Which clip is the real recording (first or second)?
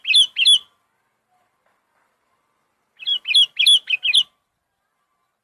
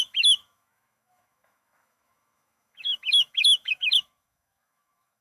first